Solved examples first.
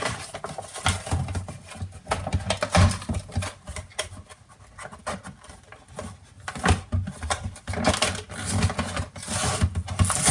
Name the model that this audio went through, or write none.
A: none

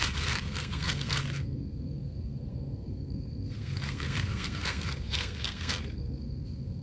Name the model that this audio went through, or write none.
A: codec, SNAC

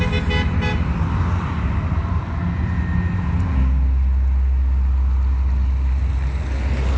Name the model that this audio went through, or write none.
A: none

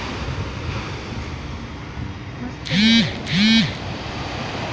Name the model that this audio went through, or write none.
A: none